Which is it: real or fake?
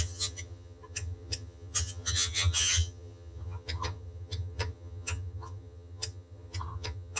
fake